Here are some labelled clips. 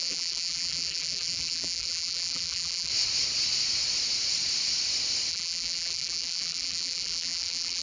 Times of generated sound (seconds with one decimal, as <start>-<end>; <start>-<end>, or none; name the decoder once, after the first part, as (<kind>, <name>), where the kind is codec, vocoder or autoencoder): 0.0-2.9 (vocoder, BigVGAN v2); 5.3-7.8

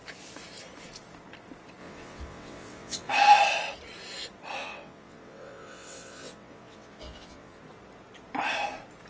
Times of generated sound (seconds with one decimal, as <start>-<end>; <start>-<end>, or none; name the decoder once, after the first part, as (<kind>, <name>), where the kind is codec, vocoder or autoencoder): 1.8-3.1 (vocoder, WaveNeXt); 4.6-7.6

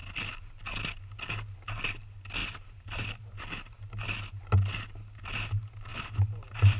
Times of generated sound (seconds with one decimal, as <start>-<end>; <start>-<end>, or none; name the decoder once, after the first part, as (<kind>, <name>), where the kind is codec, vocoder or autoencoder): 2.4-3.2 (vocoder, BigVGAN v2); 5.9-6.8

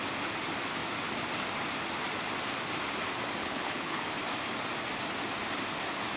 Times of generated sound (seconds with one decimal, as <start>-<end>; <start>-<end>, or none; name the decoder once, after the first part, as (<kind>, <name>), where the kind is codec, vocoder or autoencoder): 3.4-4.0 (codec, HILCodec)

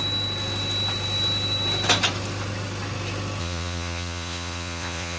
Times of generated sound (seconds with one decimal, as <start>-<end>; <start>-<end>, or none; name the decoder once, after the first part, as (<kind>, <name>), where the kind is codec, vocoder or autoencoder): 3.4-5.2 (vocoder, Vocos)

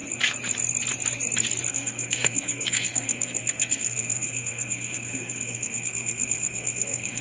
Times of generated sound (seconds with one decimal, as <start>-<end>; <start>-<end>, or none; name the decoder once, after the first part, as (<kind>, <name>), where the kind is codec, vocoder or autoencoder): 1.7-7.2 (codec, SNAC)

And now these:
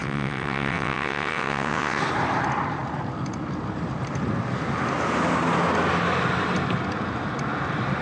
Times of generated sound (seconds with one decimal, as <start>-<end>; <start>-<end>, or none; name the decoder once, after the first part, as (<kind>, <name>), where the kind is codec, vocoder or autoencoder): 0.0-2.0 (vocoder, WaveNeXt)

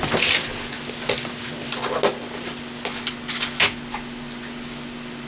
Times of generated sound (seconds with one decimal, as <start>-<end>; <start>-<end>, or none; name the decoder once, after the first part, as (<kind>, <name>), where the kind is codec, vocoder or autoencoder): none